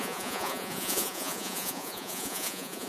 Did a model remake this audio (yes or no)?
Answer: yes